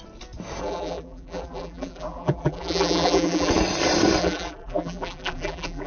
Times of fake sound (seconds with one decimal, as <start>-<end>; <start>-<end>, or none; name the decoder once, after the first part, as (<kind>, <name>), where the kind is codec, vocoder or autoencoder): 0.6-3.5 (vocoder, BigVGAN v2); 4.2-5.9